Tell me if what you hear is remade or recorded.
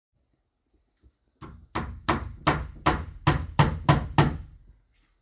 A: recorded